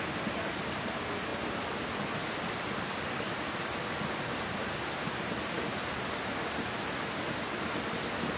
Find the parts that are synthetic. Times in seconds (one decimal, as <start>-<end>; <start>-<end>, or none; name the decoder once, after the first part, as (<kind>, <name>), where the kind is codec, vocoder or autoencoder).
none